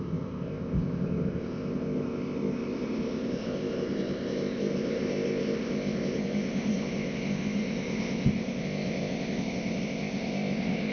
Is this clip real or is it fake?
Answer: fake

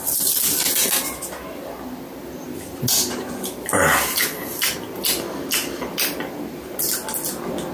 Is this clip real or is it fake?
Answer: real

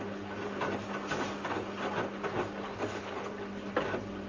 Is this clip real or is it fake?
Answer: real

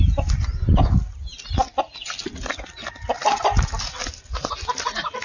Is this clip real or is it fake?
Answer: real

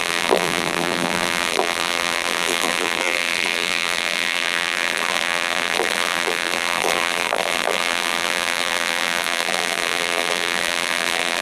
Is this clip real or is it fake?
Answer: fake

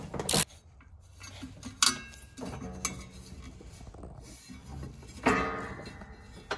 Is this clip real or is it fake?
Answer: real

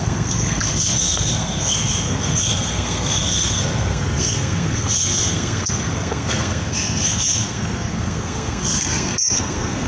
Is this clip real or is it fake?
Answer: fake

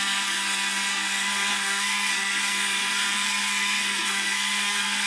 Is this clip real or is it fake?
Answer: fake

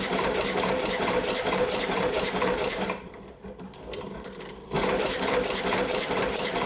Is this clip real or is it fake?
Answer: fake